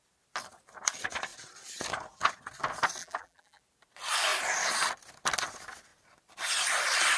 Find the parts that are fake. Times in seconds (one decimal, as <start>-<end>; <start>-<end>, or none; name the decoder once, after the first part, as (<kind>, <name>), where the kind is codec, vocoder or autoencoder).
3.0-3.6 (vocoder, BigVGAN v2)